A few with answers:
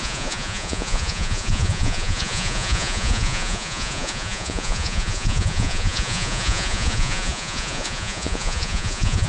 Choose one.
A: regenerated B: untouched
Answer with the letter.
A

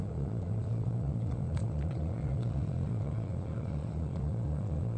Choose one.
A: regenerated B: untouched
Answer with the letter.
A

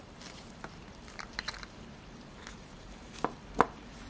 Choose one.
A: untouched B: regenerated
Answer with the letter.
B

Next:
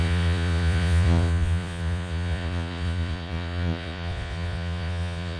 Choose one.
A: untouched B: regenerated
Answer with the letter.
B